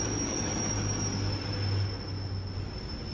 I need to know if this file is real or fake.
real